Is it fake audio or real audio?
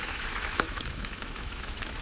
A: fake